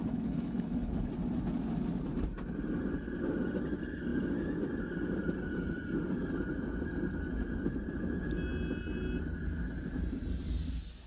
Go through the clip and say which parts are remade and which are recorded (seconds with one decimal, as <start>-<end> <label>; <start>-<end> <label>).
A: 0.0-1.1 remade; 1.1-11.1 recorded